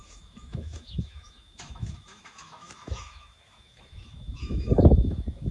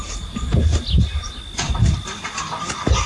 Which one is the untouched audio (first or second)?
second